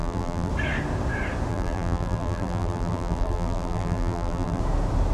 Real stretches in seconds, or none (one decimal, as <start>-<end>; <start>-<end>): 0.5-1.5; 4.6-5.1